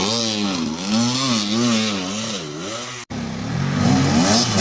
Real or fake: real